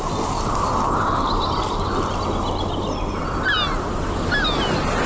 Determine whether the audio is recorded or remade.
recorded